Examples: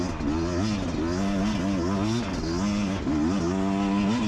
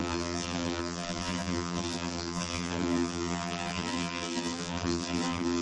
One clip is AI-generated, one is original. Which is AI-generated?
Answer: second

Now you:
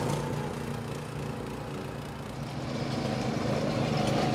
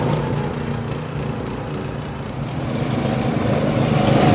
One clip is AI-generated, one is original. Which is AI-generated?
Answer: second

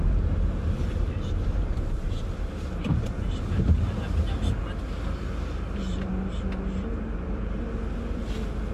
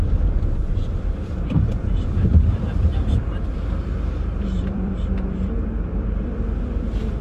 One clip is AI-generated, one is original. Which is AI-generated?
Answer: second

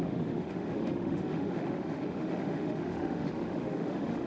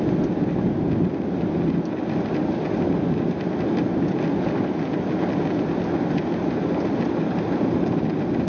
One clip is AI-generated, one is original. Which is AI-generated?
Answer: first